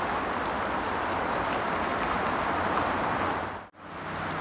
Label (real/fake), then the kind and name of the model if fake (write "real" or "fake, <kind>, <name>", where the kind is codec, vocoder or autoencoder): real